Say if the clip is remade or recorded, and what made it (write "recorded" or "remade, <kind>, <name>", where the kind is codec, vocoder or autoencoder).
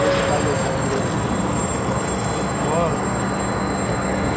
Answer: recorded